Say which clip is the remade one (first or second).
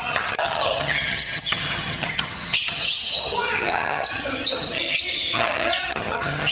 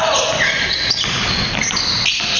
first